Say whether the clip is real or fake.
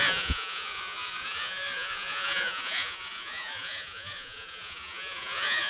fake